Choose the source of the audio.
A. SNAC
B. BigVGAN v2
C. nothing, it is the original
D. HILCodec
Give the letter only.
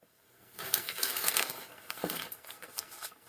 A